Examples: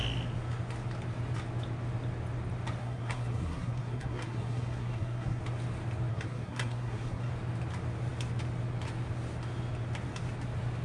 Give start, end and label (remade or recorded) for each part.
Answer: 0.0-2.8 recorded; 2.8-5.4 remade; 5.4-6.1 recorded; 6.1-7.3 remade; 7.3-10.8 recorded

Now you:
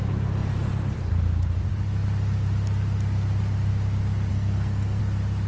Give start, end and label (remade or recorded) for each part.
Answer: 0.0-4.3 recorded; 4.3-5.0 remade; 5.0-5.5 recorded

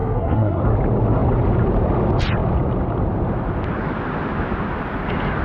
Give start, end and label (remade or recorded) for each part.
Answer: 0.0-0.6 remade; 0.6-5.4 recorded

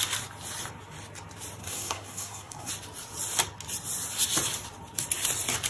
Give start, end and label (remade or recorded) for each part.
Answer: 0.0-1.6 recorded; 1.6-2.7 remade; 2.7-5.7 recorded